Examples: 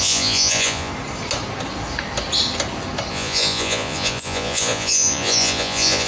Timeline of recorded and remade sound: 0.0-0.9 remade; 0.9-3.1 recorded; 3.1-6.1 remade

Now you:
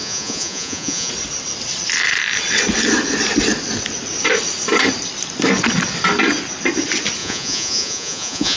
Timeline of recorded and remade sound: 0.0-1.1 remade; 1.1-7.2 recorded; 7.2-8.6 remade

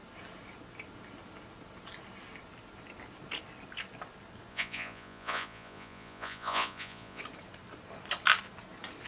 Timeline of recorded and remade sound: 0.0-4.5 recorded; 4.5-7.2 remade; 7.2-9.1 recorded